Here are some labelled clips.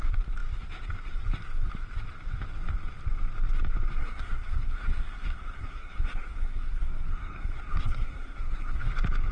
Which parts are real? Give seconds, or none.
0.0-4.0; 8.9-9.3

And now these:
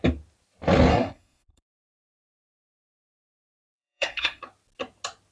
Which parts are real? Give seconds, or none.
0.0-0.9; 2.0-3.3; 4.4-5.3

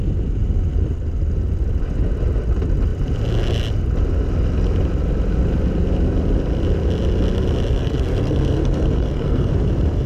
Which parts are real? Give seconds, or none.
0.0-7.8; 9.5-10.1

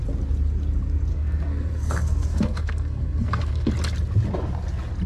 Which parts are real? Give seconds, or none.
0.0-1.1; 3.7-5.1

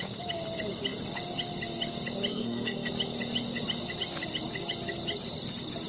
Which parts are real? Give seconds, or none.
0.0-2.3; 2.9-5.9